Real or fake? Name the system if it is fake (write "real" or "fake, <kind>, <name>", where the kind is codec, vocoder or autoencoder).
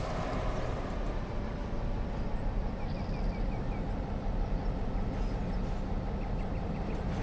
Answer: real